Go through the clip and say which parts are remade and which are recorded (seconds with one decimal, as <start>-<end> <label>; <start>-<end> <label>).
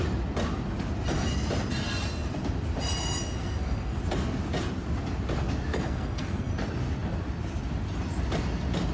0.0-3.4 recorded; 3.4-4.0 remade; 4.0-5.7 recorded; 5.7-6.5 remade; 6.5-8.9 recorded